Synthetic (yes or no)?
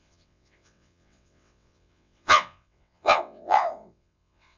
yes